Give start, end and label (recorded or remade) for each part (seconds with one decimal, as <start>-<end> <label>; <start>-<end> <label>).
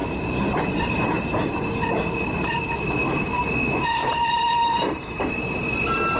0.0-4.0 recorded; 4.0-5.2 remade; 5.2-6.2 recorded